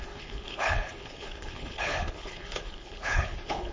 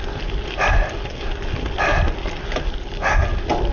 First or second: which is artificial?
first